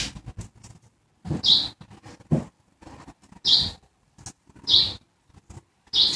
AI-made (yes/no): no